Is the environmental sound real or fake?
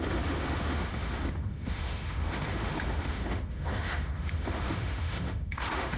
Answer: fake